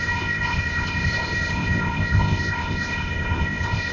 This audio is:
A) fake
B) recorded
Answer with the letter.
A